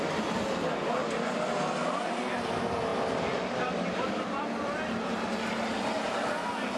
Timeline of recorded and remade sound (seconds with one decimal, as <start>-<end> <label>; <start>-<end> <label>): 0.0-6.8 recorded